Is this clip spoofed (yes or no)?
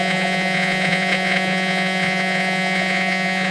yes